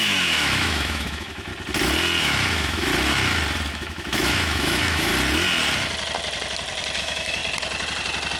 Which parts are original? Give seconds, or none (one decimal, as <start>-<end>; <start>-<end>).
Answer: 1.5-2.2; 2.9-3.7; 5.1-7.0; 7.4-8.4

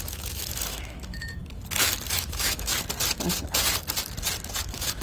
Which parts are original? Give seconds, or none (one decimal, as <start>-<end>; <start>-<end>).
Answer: 1.4-2.1; 2.7-4.6